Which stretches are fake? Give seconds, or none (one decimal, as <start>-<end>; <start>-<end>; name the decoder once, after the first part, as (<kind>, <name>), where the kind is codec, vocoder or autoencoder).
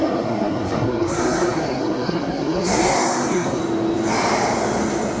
0.0-3.6 (codec, SNAC)